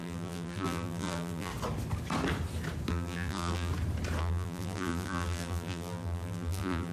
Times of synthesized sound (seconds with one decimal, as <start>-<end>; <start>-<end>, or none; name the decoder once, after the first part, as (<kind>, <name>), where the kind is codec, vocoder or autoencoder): 0.0-1.5 (vocoder, BigVGAN v2); 2.9-3.7; 4.2-6.9